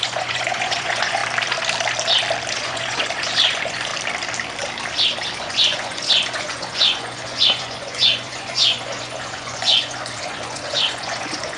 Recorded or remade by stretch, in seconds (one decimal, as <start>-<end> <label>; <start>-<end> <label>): 0.0-1.2 remade; 1.2-2.5 recorded; 2.5-3.9 remade; 3.9-5.4 recorded; 5.4-11.6 remade